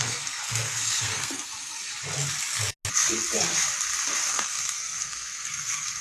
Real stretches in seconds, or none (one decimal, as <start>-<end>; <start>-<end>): 1.9-4.3